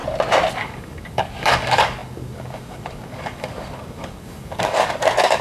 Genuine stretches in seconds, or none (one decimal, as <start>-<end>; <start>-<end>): 0.0-0.5